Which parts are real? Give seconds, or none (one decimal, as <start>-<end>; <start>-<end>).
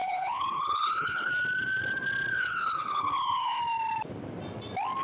1.3-2.3; 3.6-5.0